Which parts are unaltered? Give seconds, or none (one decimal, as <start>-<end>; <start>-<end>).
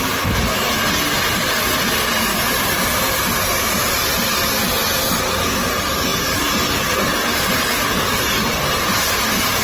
0.0-2.3; 4.1-6.1